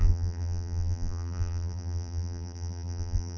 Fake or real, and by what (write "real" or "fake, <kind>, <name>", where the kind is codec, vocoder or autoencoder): fake, vocoder, BigVGAN v2